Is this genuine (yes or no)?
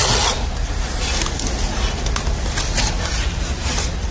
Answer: yes